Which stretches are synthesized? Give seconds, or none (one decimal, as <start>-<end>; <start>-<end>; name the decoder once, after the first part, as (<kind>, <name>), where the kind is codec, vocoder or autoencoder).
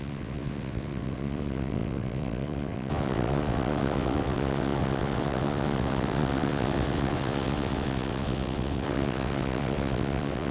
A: 0.0-10.5 (vocoder, WaveNeXt)